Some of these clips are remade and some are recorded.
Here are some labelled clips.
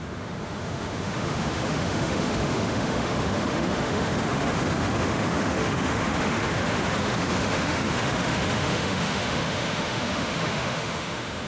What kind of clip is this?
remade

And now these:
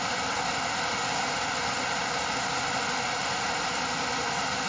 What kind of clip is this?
recorded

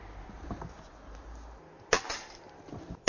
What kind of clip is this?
recorded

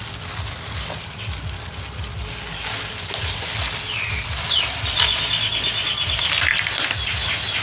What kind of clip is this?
recorded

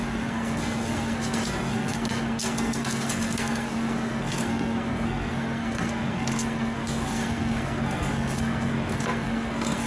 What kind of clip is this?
remade